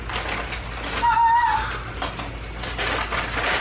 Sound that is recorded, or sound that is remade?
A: recorded